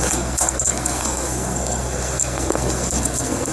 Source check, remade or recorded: remade